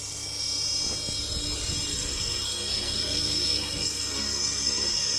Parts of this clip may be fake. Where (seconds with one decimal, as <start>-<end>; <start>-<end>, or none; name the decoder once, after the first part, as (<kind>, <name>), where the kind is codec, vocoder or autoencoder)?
1.9-5.2 (codec, SNAC)